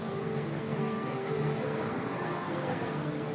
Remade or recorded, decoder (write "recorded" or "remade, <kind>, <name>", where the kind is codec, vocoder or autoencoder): remade, codec, SNAC